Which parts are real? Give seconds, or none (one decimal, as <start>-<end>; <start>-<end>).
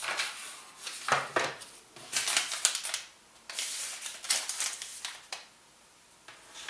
0.0-6.7